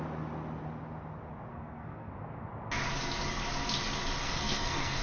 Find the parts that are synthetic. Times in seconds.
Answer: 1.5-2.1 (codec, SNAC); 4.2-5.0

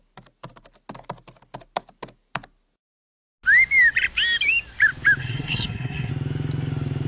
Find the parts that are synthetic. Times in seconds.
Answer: 5.2-6.1 (codec, SNAC)